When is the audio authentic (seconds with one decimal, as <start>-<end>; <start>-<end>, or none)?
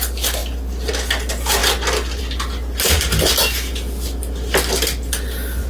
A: 0.0-5.7